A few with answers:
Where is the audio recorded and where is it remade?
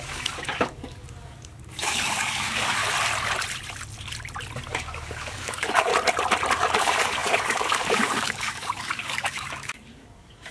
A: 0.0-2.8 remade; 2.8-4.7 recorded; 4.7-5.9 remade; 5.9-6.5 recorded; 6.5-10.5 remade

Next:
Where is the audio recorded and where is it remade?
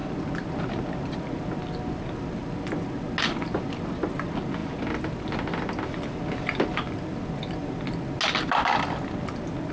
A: 0.0-9.7 recorded